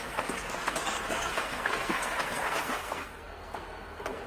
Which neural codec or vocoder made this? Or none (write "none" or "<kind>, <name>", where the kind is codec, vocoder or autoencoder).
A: codec, SNAC